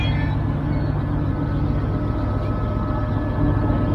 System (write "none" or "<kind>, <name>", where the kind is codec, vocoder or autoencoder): none